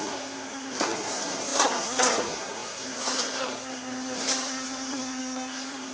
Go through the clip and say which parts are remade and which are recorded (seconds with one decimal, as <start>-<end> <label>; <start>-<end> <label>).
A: 0.0-5.9 remade